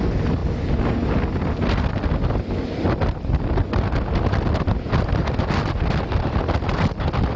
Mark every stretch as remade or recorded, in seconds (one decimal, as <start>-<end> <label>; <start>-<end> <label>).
0.0-7.4 recorded